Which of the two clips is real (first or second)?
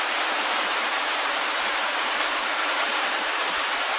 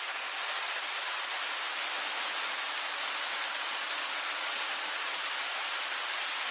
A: second